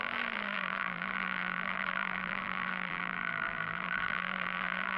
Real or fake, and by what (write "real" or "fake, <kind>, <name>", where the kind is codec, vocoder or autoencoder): fake, vocoder, BigVGAN v2